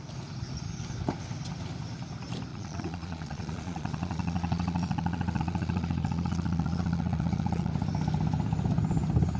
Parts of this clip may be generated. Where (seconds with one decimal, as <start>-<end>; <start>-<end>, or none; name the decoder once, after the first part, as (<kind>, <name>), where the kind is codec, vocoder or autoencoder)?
2.5-7.7 (vocoder, Vocos)